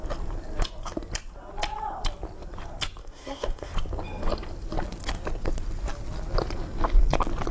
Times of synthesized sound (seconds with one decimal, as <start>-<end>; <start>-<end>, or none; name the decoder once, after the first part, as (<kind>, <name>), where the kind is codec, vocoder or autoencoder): 3.0-3.7 (codec, SNAC)